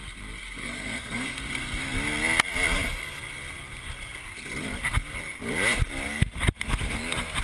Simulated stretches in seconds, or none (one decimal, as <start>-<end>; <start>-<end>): 0.6-1.4